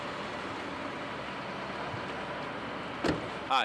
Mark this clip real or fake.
real